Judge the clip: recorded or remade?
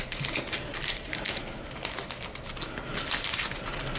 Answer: recorded